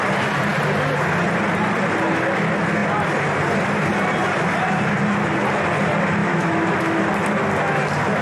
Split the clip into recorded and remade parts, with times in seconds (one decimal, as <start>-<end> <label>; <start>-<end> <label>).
0.0-6.2 recorded; 6.2-7.0 remade; 7.0-8.2 recorded